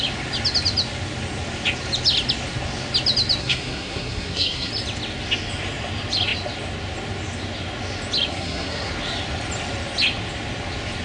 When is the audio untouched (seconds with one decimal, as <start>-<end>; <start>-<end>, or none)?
0.0-3.4; 4.7-8.3; 8.9-11.0